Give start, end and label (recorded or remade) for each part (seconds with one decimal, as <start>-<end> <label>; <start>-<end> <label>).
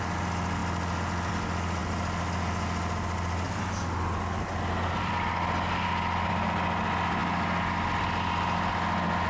0.0-9.3 recorded